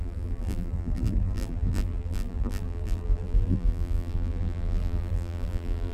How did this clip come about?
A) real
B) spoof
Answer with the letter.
B